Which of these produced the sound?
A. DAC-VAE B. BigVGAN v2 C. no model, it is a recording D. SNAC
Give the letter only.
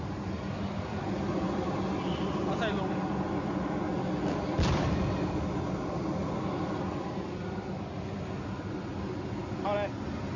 C